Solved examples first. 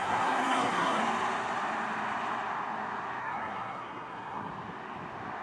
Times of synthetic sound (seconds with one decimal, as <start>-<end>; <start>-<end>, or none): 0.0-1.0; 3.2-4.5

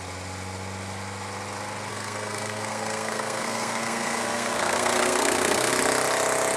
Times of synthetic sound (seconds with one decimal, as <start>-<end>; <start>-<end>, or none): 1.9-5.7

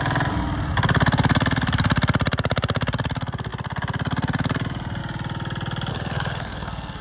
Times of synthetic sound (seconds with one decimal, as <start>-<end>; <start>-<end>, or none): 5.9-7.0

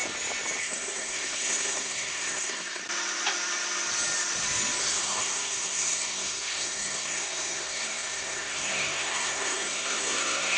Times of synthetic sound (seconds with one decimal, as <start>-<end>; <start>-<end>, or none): 0.6-2.8; 4.8-10.6

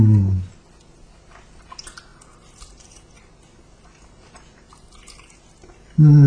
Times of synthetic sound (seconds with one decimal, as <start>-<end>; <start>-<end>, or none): none